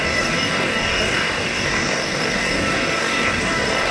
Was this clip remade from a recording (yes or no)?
yes